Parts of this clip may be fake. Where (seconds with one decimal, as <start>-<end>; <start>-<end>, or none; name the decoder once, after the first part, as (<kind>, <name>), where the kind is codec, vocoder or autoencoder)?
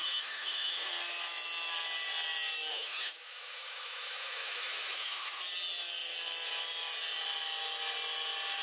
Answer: 0.0-0.9 (autoencoder, DAC-VAE); 2.7-5.4